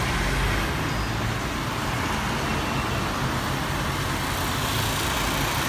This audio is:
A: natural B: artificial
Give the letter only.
A